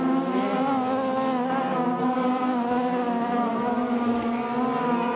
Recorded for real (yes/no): yes